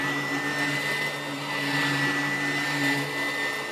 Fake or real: real